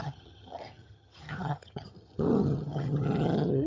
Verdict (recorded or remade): remade